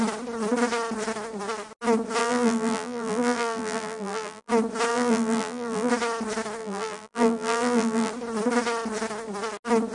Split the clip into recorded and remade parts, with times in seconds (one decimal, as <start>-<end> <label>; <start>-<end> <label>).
0.0-2.2 recorded; 2.2-4.5 remade; 4.5-4.9 recorded; 4.9-5.9 remade; 5.9-6.6 recorded; 6.6-8.1 remade; 8.1-9.9 recorded